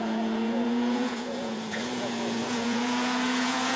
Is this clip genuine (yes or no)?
no